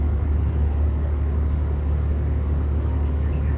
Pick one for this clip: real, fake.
fake